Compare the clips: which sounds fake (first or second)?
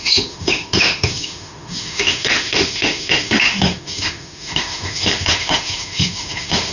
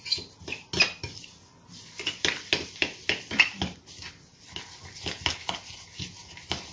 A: first